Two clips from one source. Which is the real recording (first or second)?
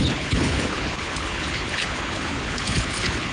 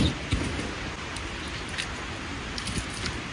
second